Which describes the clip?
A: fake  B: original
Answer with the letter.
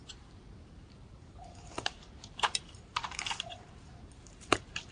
A